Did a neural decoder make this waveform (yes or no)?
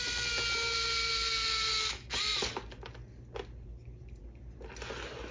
no